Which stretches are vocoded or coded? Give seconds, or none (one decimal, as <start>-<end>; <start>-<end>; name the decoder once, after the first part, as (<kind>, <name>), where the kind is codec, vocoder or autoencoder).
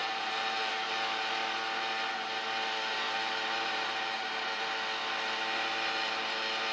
0.0-0.9 (vocoder, BigVGAN v2); 2.9-4.7